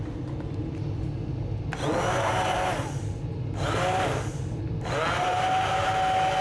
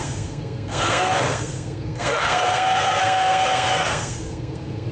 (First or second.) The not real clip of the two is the second